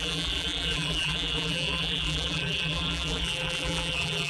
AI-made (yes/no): yes